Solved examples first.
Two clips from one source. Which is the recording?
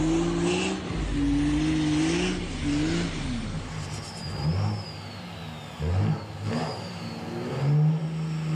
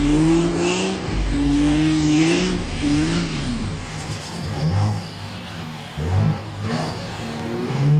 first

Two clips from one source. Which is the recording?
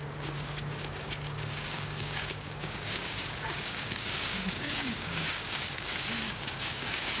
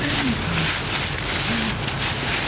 second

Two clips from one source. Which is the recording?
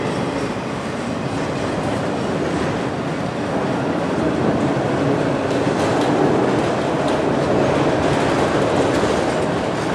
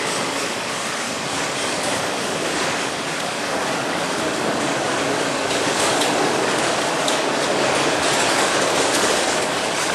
first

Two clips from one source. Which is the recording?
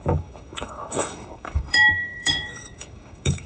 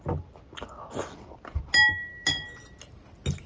second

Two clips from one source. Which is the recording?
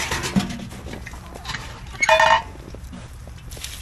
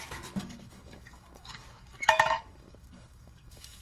first